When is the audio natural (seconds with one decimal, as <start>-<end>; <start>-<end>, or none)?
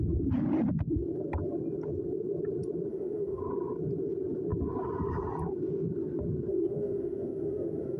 0.0-2.9; 3.4-6.5